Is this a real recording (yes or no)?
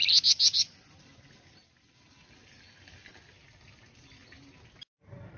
yes